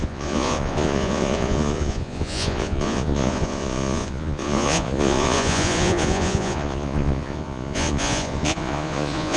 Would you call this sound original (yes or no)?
no